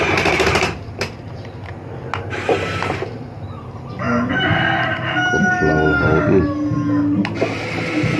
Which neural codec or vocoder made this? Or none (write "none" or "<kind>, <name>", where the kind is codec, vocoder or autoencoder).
none